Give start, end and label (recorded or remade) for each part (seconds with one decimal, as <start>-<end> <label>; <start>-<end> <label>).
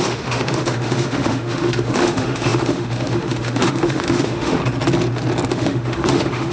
0.0-4.6 remade; 4.6-5.5 recorded; 5.5-6.5 remade